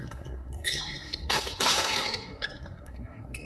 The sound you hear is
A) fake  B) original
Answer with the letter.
A